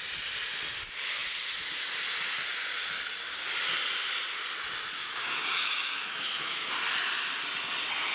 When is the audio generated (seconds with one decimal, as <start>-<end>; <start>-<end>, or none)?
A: 5.0-6.7